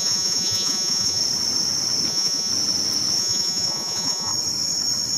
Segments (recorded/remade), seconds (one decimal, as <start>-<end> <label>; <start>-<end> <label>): 0.0-1.2 remade; 1.2-2.1 recorded; 2.1-2.5 remade; 2.5-3.2 recorded; 3.2-4.3 remade; 4.3-5.2 recorded